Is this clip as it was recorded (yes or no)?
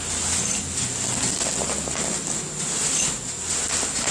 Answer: yes